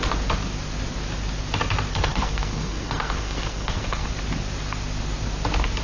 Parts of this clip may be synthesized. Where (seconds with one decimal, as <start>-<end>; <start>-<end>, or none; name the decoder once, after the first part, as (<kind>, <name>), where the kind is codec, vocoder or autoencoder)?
1.9-4.1 (codec, SNAC)